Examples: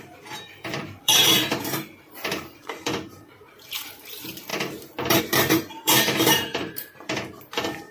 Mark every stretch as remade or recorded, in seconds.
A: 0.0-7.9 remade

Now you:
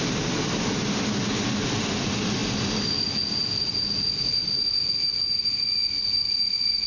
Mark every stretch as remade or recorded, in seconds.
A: 0.0-6.9 recorded

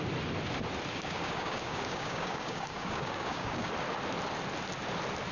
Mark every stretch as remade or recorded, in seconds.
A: 0.0-0.9 recorded; 0.9-3.7 remade; 3.7-5.3 recorded

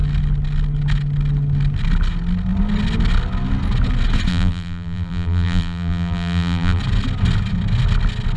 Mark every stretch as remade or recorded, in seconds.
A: 0.0-4.3 recorded; 4.3-6.8 remade; 6.8-8.4 recorded

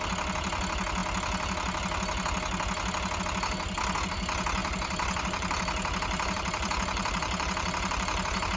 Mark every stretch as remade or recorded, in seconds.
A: 0.0-4.6 recorded; 4.6-8.6 remade

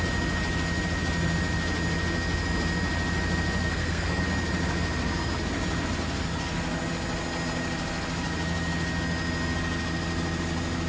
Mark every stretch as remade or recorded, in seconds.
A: 0.0-3.6 recorded; 3.6-4.2 remade; 4.2-10.9 recorded

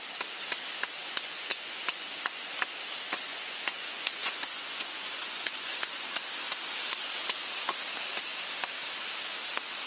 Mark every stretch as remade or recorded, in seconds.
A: 0.0-1.0 recorded; 1.0-2.4 remade; 2.4-3.3 recorded; 3.3-6.1 remade; 6.1-9.9 recorded